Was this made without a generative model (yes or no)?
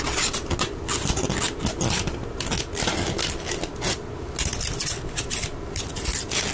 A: yes